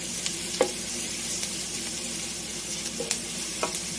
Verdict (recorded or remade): recorded